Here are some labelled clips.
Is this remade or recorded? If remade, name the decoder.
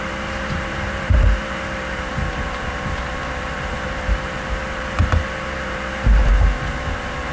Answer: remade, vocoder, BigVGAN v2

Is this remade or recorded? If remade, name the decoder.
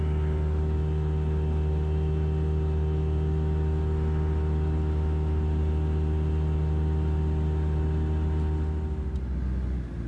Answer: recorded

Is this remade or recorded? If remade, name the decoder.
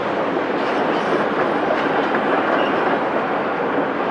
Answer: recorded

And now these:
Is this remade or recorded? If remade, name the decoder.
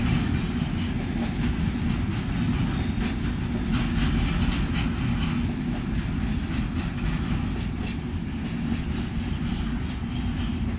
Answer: recorded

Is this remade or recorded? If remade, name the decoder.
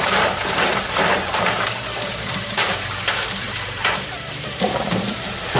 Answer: remade, vocoder, BigVGAN v2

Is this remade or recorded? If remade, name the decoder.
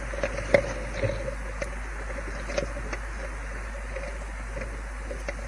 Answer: recorded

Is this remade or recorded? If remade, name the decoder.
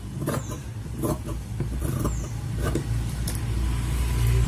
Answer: remade, vocoder, BigVGAN v2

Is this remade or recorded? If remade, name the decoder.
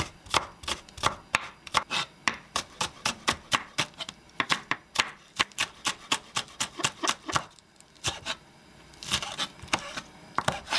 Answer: remade, vocoder, BigVGAN v2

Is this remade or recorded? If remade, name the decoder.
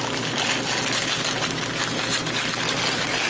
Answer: recorded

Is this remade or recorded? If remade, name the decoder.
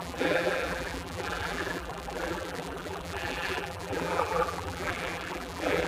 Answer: remade, vocoder, BigVGAN v2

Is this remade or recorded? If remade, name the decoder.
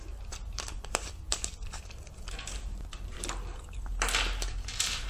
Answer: remade, vocoder, BigVGAN v2